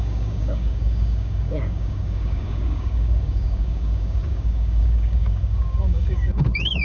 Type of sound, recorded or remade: remade